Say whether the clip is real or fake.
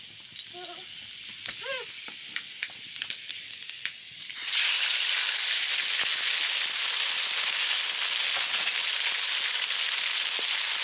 real